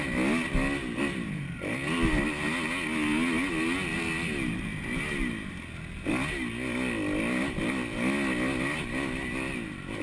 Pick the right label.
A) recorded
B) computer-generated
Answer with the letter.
A